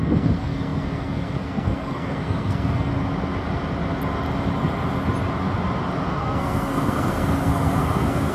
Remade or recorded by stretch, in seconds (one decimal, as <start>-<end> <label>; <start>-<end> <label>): 0.0-2.9 remade; 2.9-6.1 recorded; 6.1-8.3 remade